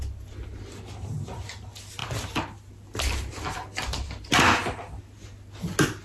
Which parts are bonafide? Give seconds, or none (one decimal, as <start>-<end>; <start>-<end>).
0.0-6.0